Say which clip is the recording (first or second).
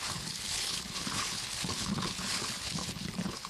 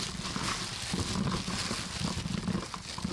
second